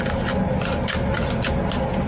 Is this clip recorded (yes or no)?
yes